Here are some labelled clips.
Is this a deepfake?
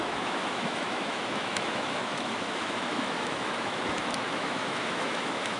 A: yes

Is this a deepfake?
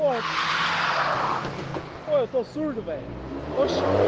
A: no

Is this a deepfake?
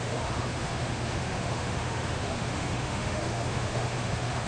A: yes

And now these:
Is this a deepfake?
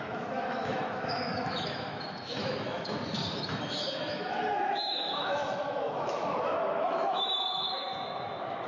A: yes